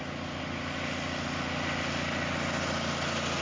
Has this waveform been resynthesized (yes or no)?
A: no